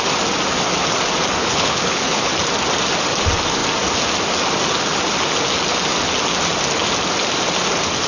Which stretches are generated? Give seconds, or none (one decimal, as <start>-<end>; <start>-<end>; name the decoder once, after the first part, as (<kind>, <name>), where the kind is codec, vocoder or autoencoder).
1.4-2.3 (codec, HILCodec)